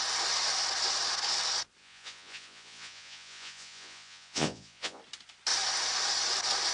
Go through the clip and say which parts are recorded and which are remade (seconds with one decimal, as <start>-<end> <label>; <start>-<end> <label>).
0.0-1.8 recorded; 1.8-5.0 remade; 5.0-6.7 recorded